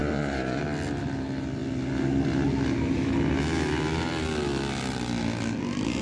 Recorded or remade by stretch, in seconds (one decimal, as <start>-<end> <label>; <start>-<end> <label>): 0.0-0.6 remade; 0.6-6.0 recorded